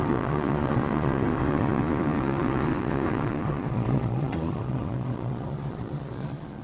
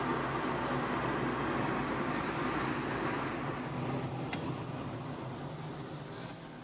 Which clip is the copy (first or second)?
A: first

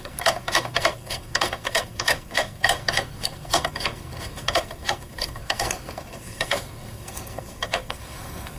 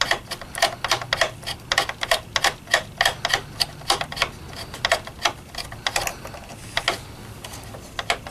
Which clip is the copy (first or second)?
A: first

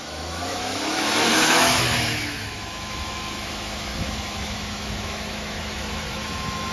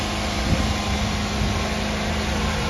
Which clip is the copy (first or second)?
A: first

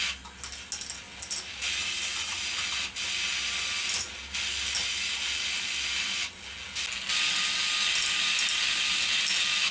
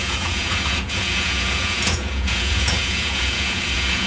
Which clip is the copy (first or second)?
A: second